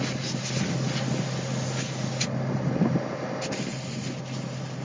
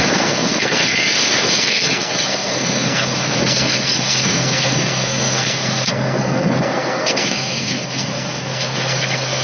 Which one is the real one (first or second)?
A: first